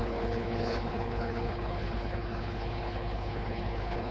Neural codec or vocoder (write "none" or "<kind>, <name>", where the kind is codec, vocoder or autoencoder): codec, HILCodec